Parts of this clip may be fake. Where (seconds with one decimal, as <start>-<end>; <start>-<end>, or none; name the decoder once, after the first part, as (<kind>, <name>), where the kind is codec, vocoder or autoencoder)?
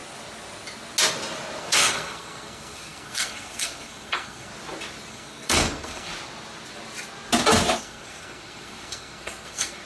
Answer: 1.6-4.5 (codec, SNAC); 5.1-6.1; 7.8-9.9